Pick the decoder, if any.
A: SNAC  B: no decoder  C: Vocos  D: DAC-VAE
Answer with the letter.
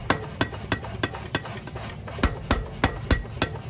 B